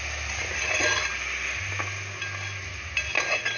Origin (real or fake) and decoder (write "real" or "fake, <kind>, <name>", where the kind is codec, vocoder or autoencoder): real